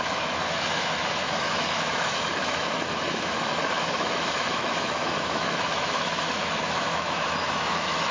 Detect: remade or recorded remade